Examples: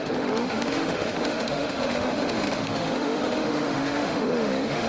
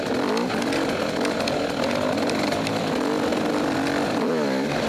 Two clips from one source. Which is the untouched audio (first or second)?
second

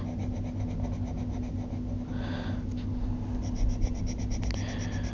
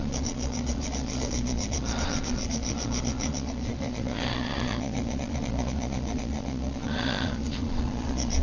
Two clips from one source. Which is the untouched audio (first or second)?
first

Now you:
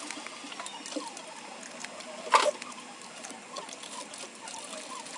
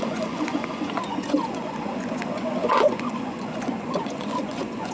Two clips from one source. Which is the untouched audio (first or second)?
first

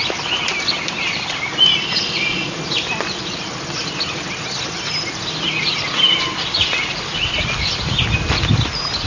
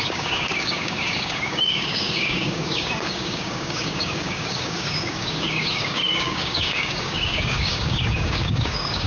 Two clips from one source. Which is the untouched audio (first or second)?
first